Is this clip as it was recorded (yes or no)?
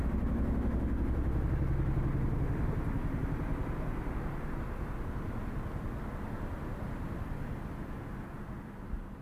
yes